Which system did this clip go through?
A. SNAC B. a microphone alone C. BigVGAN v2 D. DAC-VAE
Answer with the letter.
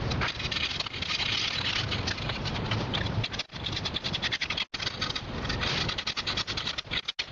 B